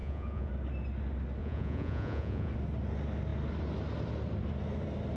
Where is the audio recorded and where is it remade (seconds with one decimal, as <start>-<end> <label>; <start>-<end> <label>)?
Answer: 0.0-0.5 remade; 0.5-1.4 recorded; 1.4-2.5 remade; 2.5-5.2 recorded